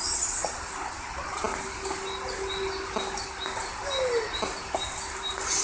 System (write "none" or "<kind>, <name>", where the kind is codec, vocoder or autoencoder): none